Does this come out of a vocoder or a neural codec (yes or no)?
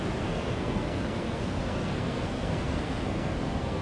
yes